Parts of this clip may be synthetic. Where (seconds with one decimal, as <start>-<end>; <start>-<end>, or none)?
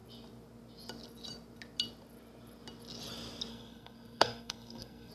3.5-5.1